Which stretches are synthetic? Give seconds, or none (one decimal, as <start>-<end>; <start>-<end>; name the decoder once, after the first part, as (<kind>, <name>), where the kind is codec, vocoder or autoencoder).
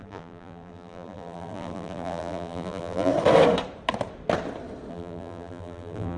0.0-3.1 (vocoder, BigVGAN v2); 4.9-6.2